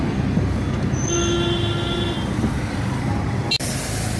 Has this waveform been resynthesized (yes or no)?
no